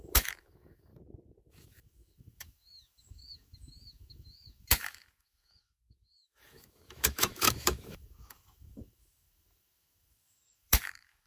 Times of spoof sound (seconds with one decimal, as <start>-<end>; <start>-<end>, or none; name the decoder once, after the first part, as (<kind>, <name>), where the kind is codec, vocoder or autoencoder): 0.0-0.9 (autoencoder, DAC-VAE); 1.4-11.3